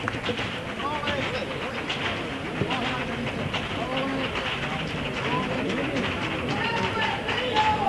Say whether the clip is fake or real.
real